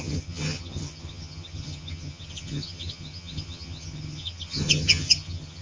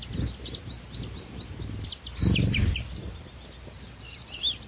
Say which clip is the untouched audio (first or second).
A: second